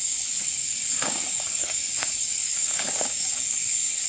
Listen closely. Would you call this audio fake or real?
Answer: fake